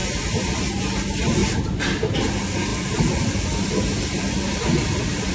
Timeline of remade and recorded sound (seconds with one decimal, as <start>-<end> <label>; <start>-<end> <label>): 0.0-0.8 remade; 0.8-1.4 recorded; 1.4-2.2 remade; 2.2-5.3 recorded